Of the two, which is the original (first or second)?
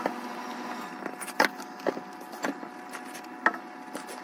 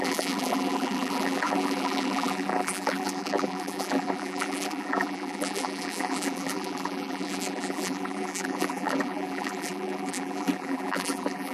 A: first